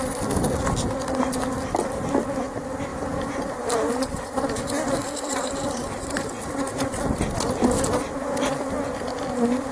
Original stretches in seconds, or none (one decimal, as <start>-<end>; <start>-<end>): 0.0-2.9; 4.4-5.3; 6.3-9.7